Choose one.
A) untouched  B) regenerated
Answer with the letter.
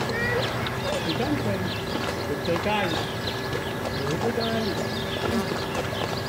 A